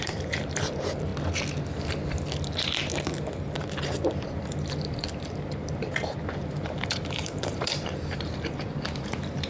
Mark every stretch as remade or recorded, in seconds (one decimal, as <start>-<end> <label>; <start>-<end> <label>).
0.0-1.1 remade; 1.1-3.6 recorded; 3.6-9.5 remade